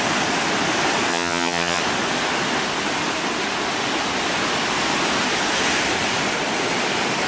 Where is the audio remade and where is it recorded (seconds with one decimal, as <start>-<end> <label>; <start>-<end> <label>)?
0.0-1.1 recorded; 1.1-1.8 remade; 1.8-7.3 recorded